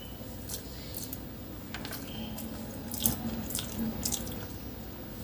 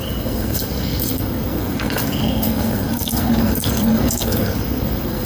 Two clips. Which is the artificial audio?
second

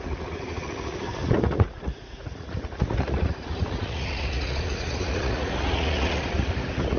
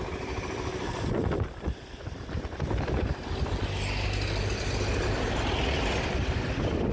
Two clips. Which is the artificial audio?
first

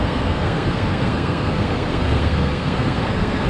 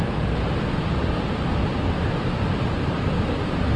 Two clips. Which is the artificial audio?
first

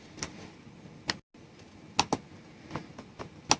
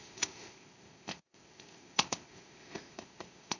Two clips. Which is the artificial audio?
second